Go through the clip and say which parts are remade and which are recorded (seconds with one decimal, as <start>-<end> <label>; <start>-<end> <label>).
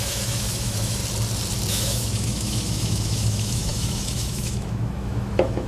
0.0-1.0 remade; 1.0-1.7 recorded; 1.7-5.7 remade